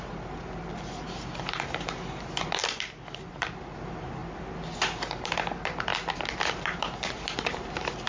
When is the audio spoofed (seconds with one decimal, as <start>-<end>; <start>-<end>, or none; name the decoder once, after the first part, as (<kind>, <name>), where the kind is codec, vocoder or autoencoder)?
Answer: 0.0-2.6 (vocoder, BigVGAN v2); 3.3-4.2; 5.0-5.9; 6.5-8.1